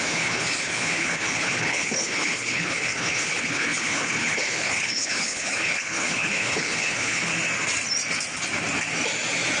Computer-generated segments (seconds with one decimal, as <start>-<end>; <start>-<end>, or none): 0.0-7.3